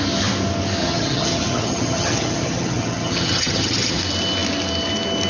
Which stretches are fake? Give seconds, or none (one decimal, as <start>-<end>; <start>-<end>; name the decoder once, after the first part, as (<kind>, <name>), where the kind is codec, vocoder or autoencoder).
0.8-4.0 (vocoder, HiFi-GAN)